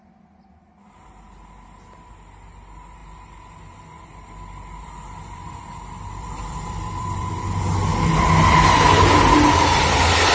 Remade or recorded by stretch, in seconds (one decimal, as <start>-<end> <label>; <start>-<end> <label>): 0.0-3.0 recorded; 3.0-7.3 remade; 7.3-10.3 recorded